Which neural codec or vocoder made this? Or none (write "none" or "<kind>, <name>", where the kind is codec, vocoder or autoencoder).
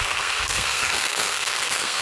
codec, SNAC